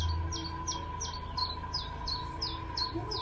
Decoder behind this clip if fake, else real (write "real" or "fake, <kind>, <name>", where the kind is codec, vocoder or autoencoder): real